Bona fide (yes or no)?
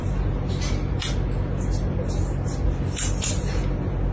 yes